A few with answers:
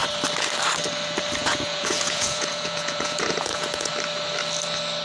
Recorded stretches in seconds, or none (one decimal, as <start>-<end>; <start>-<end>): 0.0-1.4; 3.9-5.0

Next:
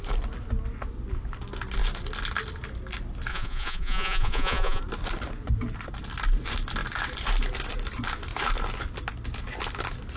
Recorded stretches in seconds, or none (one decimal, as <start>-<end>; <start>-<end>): 0.0-3.3; 4.8-10.2

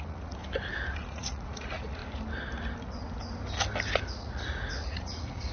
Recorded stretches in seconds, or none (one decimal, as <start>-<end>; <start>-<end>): 0.4-1.0; 2.0-4.1